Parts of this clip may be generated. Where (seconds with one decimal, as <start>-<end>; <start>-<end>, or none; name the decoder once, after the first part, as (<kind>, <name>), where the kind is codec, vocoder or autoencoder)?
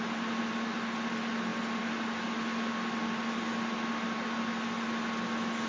none